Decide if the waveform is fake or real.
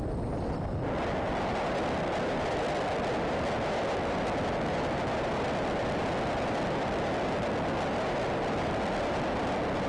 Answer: real